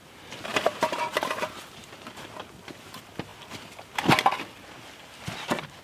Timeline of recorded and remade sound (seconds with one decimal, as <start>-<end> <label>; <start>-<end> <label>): 0.0-0.5 recorded; 0.5-1.9 remade; 1.9-5.8 recorded